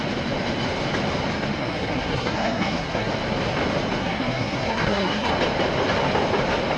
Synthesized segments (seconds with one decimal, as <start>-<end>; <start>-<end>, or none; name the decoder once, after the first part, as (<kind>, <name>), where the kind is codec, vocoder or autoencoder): 1.6-3.1 (codec, SNAC); 4.0-5.3

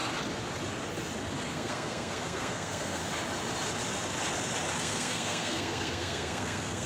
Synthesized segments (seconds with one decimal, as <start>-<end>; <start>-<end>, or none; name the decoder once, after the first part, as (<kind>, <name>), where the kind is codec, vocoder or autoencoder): 1.5-3.0 (codec, SNAC); 4.8-6.9

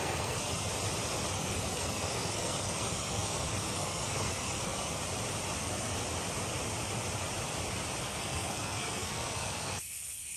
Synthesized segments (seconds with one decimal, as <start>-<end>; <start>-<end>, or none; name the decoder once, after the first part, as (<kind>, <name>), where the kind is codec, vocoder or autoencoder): 0.0-0.7 (codec, SNAC); 1.3-5.0; 5.6-6.0; 8.0-10.4

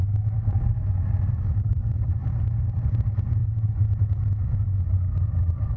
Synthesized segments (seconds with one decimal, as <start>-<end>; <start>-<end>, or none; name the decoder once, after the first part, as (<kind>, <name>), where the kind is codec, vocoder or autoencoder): none

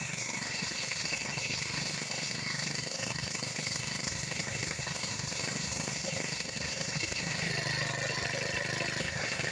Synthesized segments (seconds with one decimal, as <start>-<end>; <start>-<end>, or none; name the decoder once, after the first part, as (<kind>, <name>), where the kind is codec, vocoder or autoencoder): 0.0-7.5 (codec, SNAC); 9.0-9.5

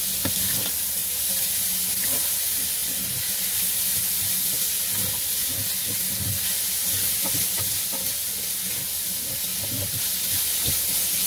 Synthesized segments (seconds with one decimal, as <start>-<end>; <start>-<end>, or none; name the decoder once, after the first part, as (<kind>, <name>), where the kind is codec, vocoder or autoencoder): none

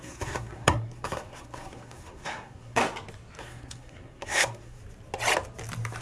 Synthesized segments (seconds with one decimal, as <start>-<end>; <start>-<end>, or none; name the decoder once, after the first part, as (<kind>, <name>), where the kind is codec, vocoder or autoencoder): 0.0-2.8 (codec, SNAC); 3.4-4.8